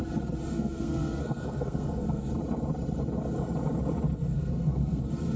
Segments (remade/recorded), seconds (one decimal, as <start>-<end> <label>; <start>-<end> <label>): 0.0-0.5 recorded; 0.5-2.3 remade; 2.3-4.3 recorded; 4.3-5.0 remade; 5.0-5.4 recorded